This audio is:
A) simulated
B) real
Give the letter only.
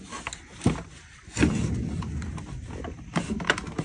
B